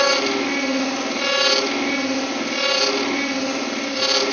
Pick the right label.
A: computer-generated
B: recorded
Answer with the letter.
B